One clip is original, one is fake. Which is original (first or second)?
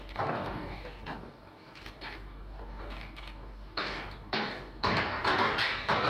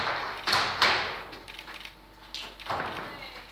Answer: second